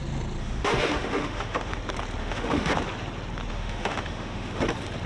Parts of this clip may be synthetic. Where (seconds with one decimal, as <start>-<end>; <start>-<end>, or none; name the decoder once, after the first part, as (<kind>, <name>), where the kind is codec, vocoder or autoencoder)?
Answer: 0.4-1.7 (autoencoder, DAC-VAE); 2.2-2.7; 3.5-4.6